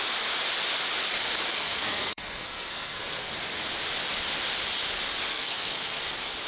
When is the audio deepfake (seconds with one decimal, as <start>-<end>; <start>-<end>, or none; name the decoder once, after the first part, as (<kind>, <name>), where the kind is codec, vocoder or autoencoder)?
1.5-3.3 (codec, SNAC); 5.3-6.0

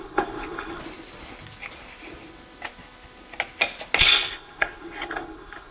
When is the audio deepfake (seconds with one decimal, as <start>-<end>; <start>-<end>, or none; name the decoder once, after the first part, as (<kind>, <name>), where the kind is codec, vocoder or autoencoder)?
0.0-0.8 (codec, HILCodec); 4.0-5.7

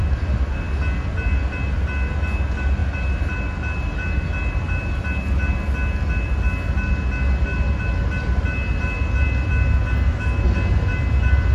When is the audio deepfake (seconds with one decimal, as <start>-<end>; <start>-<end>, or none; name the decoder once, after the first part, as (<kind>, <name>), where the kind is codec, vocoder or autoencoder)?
none

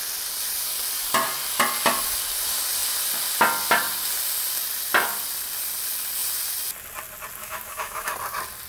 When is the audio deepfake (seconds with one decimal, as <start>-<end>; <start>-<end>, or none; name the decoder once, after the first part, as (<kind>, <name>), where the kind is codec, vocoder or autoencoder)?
7.4-8.1 (autoencoder, DAC-VAE)

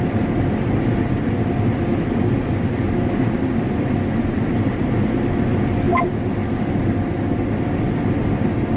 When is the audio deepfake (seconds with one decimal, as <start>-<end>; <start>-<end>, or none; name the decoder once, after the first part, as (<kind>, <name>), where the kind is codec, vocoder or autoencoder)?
none

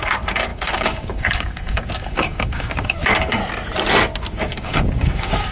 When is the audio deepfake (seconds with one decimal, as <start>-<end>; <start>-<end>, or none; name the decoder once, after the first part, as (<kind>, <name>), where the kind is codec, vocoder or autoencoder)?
0.0-3.4 (codec, DAC); 4.3-5.5

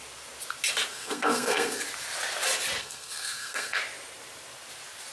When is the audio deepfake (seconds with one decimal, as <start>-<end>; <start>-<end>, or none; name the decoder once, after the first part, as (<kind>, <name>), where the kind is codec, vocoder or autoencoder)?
0.9-1.8 (codec, SNAC); 2.8-3.8